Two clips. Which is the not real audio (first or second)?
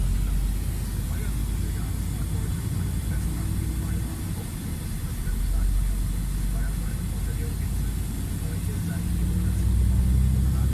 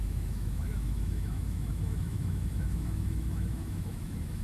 second